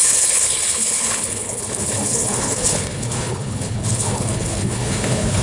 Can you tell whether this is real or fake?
fake